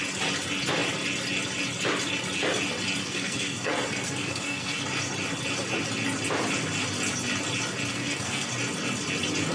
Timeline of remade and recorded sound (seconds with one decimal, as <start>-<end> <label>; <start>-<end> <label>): 0.0-3.0 recorded; 3.0-4.8 remade; 4.8-7.9 recorded; 7.9-8.5 remade; 8.5-9.5 recorded